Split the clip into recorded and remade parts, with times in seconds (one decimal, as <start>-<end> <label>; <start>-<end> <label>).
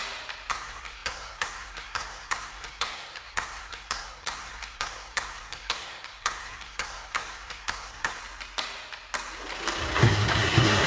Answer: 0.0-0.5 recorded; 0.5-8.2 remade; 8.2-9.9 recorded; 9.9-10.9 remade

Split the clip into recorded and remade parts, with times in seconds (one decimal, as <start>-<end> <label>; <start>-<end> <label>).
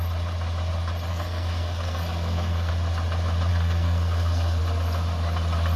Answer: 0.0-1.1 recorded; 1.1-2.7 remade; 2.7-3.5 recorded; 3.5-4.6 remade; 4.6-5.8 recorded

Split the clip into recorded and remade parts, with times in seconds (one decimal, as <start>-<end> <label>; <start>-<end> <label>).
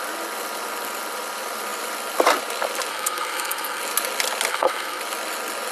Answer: 0.0-2.9 recorded; 2.9-3.8 remade; 3.8-4.5 recorded; 4.5-5.0 remade; 5.0-5.7 recorded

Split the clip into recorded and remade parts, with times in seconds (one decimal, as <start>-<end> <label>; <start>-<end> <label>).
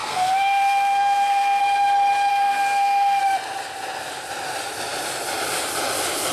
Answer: 0.0-1.6 remade; 1.6-2.3 recorded; 2.3-3.2 remade; 3.2-6.3 recorded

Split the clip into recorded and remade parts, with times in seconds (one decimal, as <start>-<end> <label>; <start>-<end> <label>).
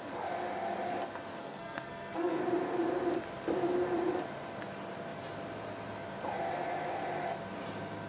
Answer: 0.0-1.4 recorded; 1.4-2.4 remade; 2.4-8.1 recorded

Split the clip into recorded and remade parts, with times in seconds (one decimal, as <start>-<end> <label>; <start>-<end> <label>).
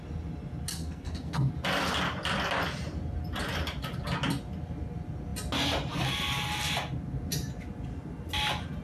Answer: 0.0-0.7 recorded; 0.7-1.5 remade; 1.5-8.8 recorded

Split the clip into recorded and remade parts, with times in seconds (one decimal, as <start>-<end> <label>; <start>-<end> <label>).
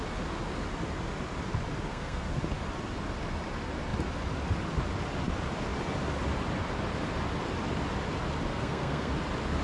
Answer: 0.0-1.9 recorded; 1.9-2.4 remade; 2.4-8.5 recorded; 8.5-9.1 remade; 9.1-9.6 recorded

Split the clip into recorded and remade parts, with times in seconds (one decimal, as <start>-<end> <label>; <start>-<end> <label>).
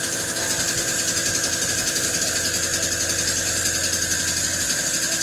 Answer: 0.0-5.2 recorded